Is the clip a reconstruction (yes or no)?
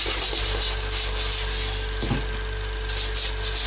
no